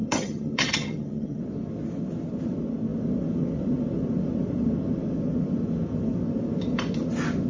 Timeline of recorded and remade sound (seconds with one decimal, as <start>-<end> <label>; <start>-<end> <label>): 0.0-1.4 remade; 1.4-7.5 recorded